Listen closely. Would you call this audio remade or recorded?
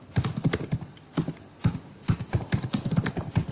recorded